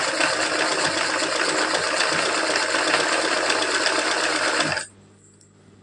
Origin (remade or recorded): recorded